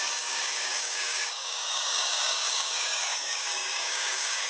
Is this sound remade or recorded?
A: remade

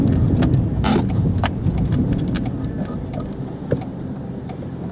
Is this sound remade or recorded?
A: recorded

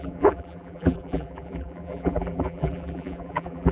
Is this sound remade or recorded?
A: remade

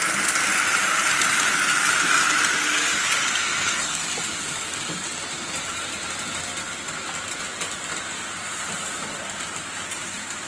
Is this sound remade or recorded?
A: recorded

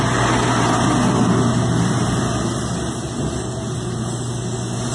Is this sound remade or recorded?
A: recorded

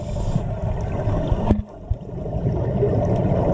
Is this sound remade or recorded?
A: recorded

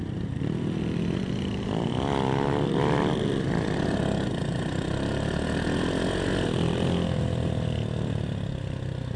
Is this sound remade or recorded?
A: recorded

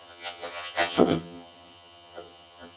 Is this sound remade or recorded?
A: remade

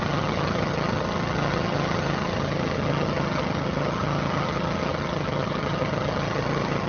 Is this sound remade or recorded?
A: remade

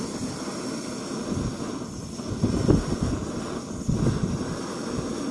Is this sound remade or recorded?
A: recorded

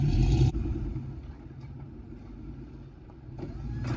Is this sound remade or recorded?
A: remade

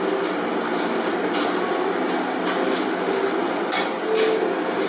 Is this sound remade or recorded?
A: recorded